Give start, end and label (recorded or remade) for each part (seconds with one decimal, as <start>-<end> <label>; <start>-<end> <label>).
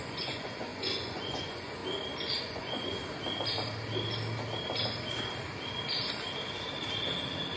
0.0-1.8 remade; 1.8-2.4 recorded; 2.4-3.0 remade; 3.0-7.6 recorded